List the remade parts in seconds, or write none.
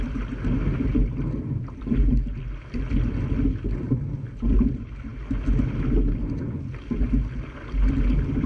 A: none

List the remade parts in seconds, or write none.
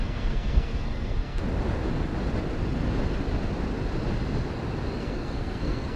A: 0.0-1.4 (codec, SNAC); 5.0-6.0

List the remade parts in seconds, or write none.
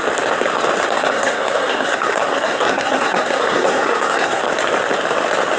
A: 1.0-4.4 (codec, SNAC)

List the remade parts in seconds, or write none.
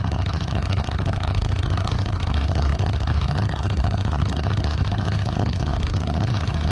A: 0.0-6.7 (codec, SNAC)